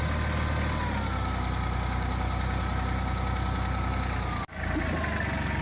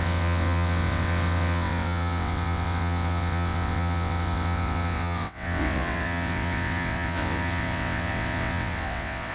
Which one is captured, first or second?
first